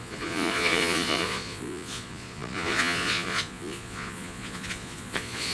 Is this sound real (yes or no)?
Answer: no